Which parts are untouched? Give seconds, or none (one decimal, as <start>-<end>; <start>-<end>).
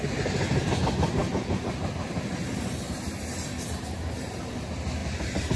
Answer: 0.0-5.6